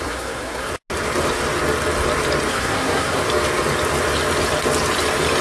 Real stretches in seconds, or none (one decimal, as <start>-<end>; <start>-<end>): 0.7-2.5; 3.2-5.4

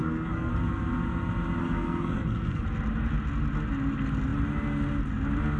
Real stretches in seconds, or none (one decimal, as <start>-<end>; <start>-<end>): 0.5-1.6; 2.6-5.6

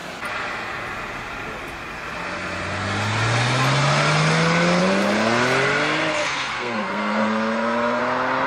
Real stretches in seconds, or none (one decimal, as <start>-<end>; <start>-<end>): 0.0-6.2; 8.0-8.5

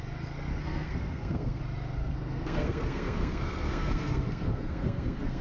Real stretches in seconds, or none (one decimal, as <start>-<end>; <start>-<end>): 0.0-0.5; 1.6-2.0

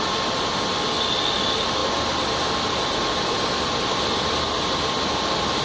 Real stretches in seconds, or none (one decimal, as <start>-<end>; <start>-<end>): 0.0-5.6

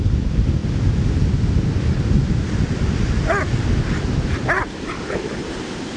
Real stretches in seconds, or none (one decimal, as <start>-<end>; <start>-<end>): 0.0-6.0

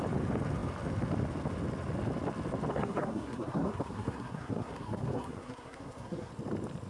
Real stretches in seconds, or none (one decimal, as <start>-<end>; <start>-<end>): 0.0-2.7; 6.3-6.9

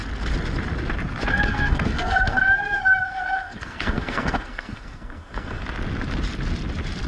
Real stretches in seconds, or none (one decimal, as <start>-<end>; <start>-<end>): 0.0-1.3; 5.6-7.1